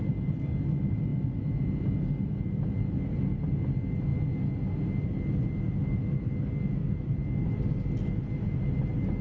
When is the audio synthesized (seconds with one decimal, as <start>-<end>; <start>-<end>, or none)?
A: none